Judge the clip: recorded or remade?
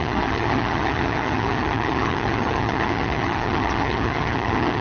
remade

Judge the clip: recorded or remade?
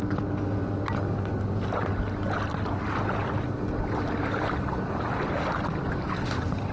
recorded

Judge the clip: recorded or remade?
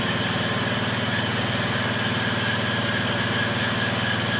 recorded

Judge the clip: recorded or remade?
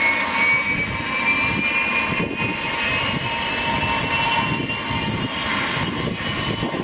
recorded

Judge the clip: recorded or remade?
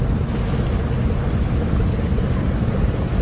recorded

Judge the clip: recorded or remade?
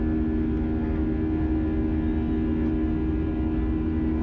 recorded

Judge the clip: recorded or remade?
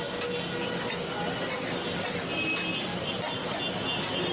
recorded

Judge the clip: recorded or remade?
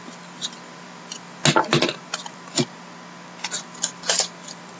recorded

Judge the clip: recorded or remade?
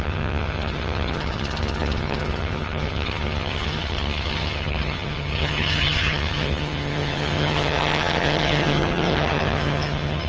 remade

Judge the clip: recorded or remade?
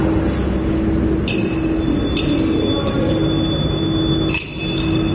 recorded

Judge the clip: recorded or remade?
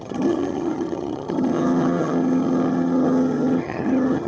remade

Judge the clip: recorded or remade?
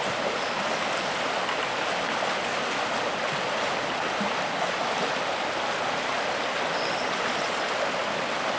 recorded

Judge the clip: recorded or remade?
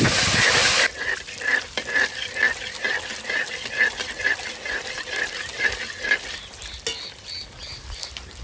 recorded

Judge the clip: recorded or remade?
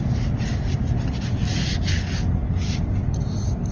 recorded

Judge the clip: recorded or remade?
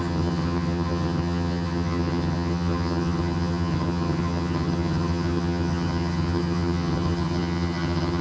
remade